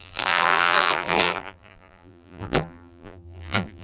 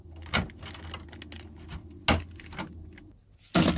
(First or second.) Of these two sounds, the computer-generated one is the first